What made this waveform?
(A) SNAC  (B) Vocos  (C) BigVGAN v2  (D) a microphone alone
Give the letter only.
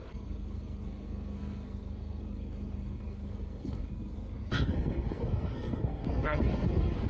A